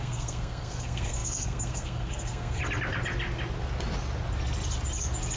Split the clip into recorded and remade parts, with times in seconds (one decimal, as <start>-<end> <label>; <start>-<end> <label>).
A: 0.0-2.6 remade; 2.6-5.4 recorded